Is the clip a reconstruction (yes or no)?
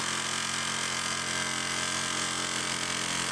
no